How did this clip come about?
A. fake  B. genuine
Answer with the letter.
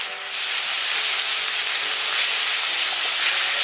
B